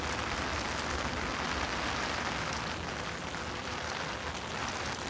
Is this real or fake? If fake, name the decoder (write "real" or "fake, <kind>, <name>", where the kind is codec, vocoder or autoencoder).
real